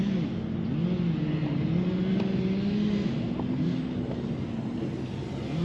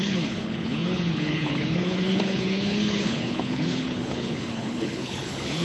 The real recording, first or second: first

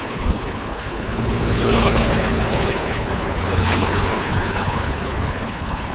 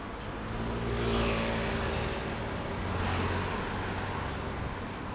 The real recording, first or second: second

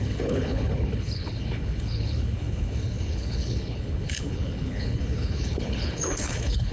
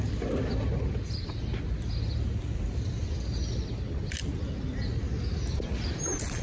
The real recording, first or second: second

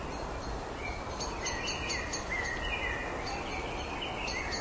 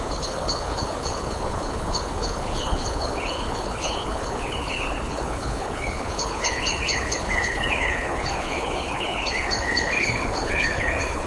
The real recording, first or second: first